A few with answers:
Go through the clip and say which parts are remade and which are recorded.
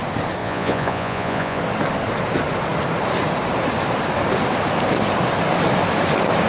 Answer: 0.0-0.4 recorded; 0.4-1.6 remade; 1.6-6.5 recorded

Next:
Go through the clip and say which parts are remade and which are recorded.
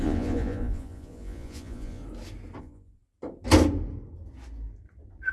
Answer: 0.0-2.0 remade; 2.0-2.6 recorded; 2.6-3.0 remade; 3.0-5.3 recorded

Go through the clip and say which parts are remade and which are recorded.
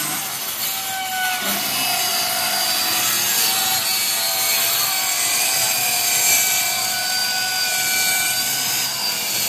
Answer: 0.0-2.1 recorded; 2.1-2.8 remade; 2.8-9.5 recorded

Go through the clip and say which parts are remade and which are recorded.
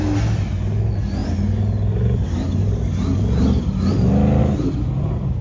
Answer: 0.0-5.4 recorded